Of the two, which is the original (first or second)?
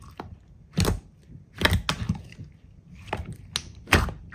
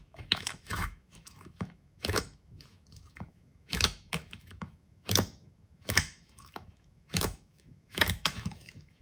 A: first